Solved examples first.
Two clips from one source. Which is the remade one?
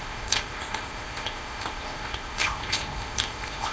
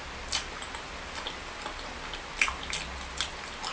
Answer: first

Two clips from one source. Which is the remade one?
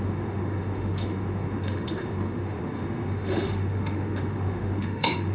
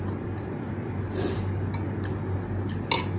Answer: first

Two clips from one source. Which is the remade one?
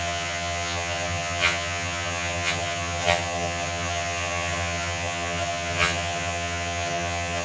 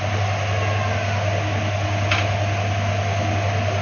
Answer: first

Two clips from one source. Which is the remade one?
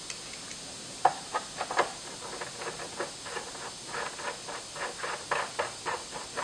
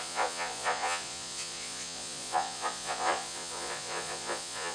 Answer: second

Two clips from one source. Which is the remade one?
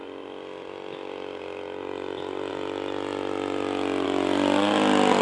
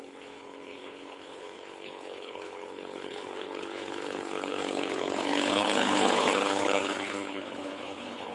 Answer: second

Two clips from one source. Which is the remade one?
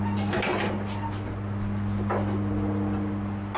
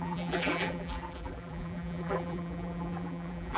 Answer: second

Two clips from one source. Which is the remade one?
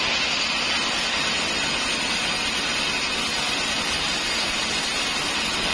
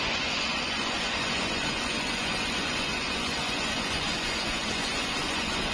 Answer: second